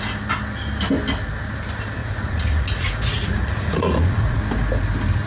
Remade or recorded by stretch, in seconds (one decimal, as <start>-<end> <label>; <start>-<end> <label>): 0.0-2.0 recorded; 2.0-4.4 remade; 4.4-5.3 recorded